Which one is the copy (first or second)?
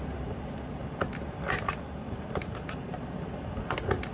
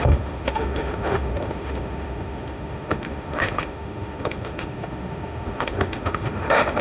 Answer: second